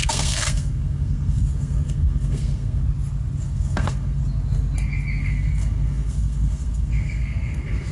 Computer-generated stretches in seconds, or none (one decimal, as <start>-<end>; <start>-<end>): 0.0-2.8; 3.4-4.2; 5.2-7.9